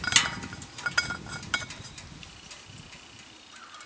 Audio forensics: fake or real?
real